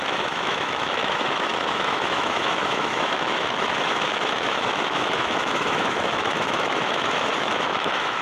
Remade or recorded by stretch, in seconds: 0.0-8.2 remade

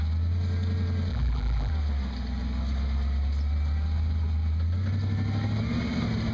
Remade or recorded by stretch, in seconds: 0.0-1.1 recorded; 1.1-1.7 remade; 1.7-6.3 recorded

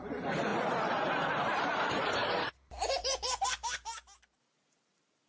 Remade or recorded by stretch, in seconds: 0.0-2.2 recorded; 2.2-3.4 remade; 3.4-5.3 recorded

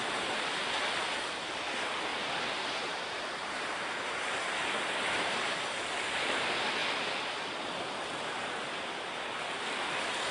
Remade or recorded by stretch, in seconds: 0.0-2.1 recorded; 2.1-5.4 remade; 5.4-10.3 recorded

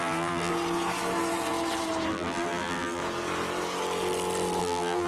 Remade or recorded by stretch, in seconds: 0.0-0.5 remade; 0.5-2.1 recorded; 2.1-3.0 remade; 3.0-4.6 recorded; 4.6-5.1 remade